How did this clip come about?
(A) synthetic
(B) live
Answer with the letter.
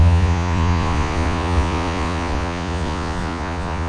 A